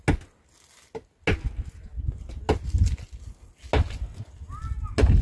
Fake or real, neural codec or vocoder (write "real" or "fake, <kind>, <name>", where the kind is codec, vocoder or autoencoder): real